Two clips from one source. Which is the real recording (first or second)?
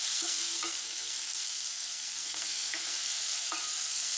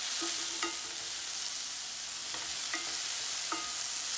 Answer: second